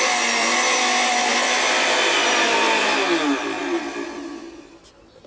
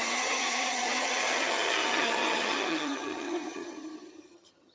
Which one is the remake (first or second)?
second